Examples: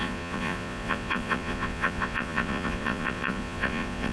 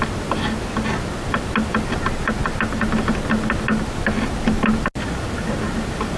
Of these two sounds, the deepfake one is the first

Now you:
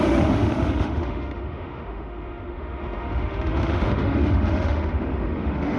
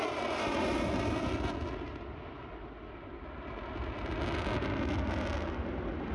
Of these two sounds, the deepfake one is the first